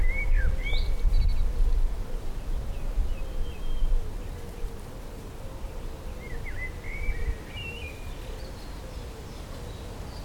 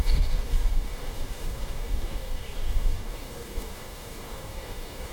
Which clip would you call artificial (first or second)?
second